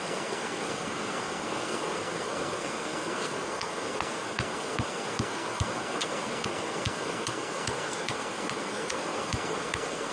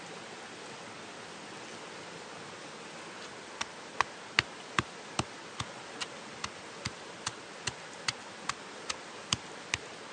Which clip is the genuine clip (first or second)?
second